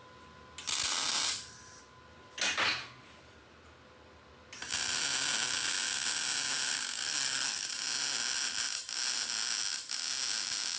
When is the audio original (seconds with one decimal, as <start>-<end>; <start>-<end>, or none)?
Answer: 0.0-6.7; 7.7-10.8